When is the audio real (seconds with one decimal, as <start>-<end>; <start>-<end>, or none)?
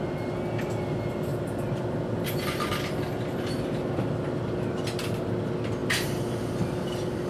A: 0.0-7.3